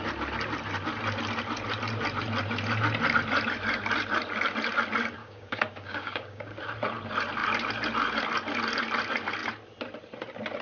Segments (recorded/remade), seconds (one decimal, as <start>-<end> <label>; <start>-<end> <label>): 0.0-5.2 recorded; 5.2-6.6 remade; 6.6-10.6 recorded